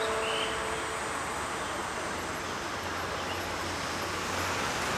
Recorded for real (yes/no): yes